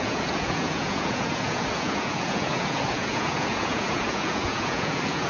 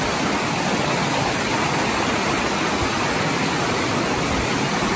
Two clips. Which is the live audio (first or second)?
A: second